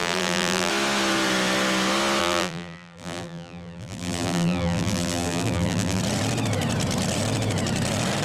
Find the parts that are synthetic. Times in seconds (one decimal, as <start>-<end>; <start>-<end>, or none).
0.0-0.7; 2.2-6.0